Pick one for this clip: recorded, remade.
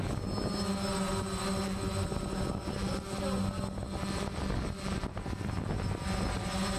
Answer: recorded